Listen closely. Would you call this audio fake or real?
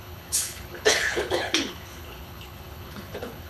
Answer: fake